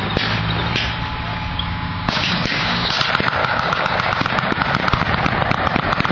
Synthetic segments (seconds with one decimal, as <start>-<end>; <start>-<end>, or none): 1.3-3.0; 3.4-4.6